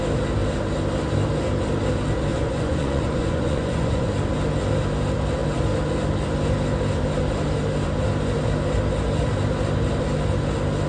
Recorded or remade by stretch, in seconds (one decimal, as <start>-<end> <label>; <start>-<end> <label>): 0.0-2.3 recorded; 2.3-4.1 remade; 4.1-10.9 recorded